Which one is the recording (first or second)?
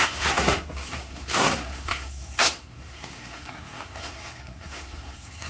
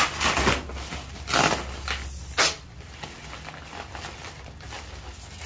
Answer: second